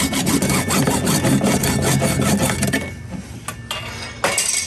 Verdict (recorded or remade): recorded